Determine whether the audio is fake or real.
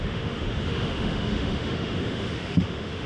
fake